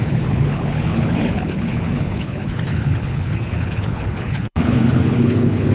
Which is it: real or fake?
fake